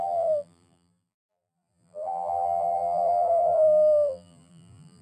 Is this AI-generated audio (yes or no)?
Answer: yes